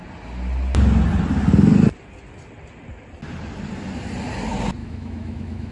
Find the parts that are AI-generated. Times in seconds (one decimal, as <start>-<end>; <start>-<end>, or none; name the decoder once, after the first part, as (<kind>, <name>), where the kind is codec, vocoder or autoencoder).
4.8-5.7 (autoencoder, DAC-VAE)